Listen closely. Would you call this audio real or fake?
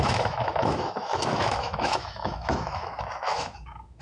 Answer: fake